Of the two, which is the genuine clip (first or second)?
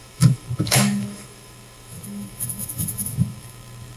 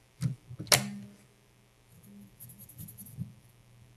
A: second